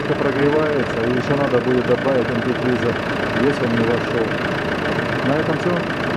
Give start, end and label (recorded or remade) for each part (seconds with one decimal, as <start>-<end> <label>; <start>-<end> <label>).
0.0-0.9 remade; 0.9-2.0 recorded; 2.0-5.6 remade; 5.6-6.2 recorded